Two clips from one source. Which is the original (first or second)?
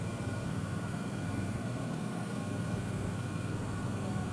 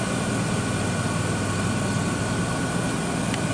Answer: second